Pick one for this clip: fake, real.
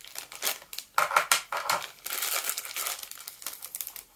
real